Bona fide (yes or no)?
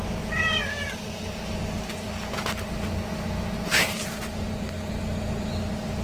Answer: yes